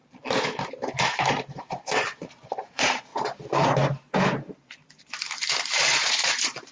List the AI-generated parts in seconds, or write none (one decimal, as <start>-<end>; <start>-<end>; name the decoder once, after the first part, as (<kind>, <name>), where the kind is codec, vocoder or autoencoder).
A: 0.7-3.1 (vocoder, BigVGAN v2); 4.9-6.7